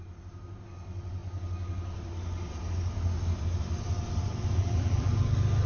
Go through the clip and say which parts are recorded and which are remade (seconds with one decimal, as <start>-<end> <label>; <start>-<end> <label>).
0.0-4.6 recorded; 4.6-5.1 remade; 5.1-5.7 recorded